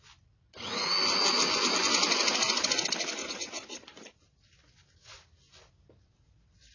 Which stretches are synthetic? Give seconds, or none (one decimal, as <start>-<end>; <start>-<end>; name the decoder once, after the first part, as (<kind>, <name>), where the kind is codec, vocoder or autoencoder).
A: 3.2-4.2 (vocoder, Vocos)